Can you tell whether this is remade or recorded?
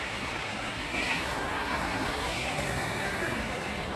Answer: remade